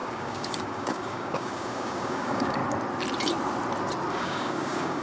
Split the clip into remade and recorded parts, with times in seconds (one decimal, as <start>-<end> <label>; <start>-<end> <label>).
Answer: 0.0-2.6 remade; 2.6-4.1 recorded; 4.1-5.0 remade

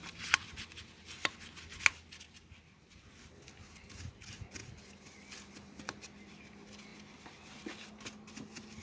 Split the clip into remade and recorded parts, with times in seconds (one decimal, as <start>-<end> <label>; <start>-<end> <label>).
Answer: 0.0-8.8 recorded

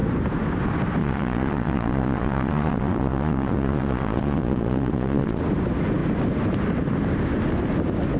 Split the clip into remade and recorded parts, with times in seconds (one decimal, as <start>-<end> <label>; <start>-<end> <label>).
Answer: 0.0-1.0 recorded; 1.0-5.4 remade; 5.4-8.2 recorded

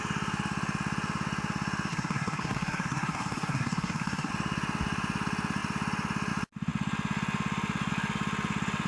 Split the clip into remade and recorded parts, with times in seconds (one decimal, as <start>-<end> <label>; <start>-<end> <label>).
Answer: 0.0-1.9 recorded; 1.9-4.3 remade; 4.3-8.9 recorded

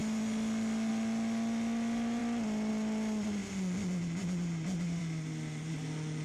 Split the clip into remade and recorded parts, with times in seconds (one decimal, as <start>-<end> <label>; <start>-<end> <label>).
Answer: 0.0-6.2 recorded

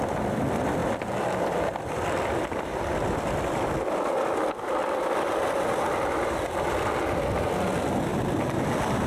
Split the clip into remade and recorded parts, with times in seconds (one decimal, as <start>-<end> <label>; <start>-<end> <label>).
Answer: 0.0-9.1 recorded

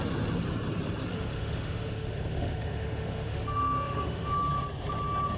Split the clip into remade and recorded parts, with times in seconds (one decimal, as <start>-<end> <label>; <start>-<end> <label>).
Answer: 0.0-1.1 recorded; 1.1-4.3 remade; 4.3-5.4 recorded